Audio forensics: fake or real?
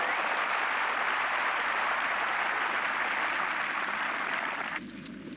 real